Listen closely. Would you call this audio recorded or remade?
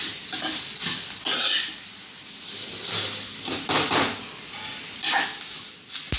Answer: recorded